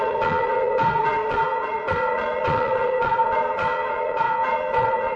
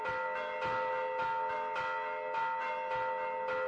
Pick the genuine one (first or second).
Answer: second